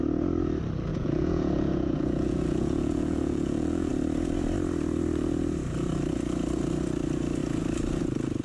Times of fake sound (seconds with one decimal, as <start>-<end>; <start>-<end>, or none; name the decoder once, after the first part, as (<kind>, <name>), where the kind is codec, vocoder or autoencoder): 0.9-3.9 (vocoder, Vocos)